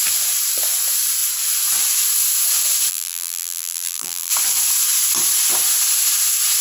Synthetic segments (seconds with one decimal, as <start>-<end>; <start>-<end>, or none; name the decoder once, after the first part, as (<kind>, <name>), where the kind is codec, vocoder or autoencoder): 2.9-4.3 (vocoder, BigVGAN v2)